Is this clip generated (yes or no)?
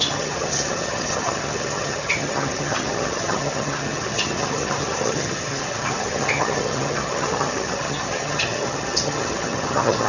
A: yes